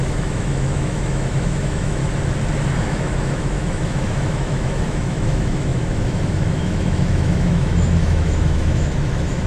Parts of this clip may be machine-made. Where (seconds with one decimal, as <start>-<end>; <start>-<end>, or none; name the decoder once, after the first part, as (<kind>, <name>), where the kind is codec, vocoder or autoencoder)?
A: 0.0-2.0 (autoencoder, DAC-VAE); 2.8-9.5